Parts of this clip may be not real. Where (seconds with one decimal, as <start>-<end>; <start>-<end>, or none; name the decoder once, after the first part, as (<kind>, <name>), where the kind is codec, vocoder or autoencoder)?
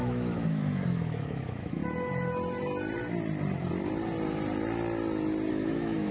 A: 0.0-1.8 (autoencoder, DAC-VAE); 5.5-6.1